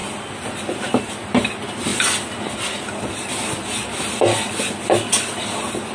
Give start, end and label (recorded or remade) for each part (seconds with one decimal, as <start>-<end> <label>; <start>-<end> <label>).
0.0-5.9 recorded